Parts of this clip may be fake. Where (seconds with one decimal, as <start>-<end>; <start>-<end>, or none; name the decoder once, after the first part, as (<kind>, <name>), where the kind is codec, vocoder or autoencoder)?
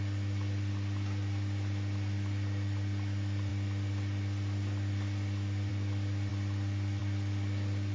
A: none